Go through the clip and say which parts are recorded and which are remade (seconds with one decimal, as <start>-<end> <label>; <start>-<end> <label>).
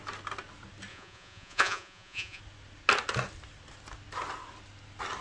0.0-0.9 recorded; 0.9-2.4 remade; 2.4-5.2 recorded